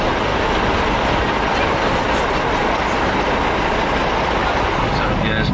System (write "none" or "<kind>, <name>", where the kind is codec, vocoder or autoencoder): none